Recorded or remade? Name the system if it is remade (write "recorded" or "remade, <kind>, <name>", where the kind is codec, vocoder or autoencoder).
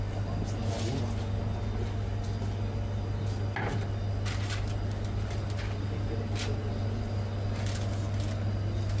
recorded